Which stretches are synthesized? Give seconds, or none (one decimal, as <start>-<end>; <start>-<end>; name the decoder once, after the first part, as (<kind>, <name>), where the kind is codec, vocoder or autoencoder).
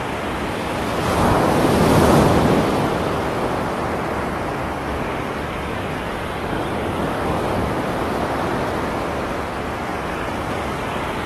4.6-7.8 (codec, DAC); 9.9-11.3